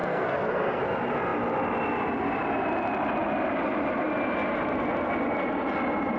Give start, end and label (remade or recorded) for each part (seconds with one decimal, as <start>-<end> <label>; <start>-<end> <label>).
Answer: 0.0-0.8 remade; 0.8-6.2 recorded